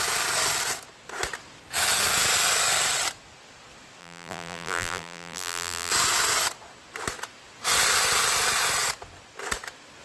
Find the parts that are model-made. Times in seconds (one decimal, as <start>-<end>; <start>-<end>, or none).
4.0-5.9